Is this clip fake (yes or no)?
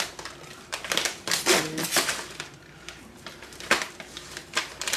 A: yes